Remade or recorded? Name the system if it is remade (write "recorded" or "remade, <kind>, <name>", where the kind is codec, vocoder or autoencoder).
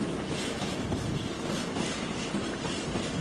recorded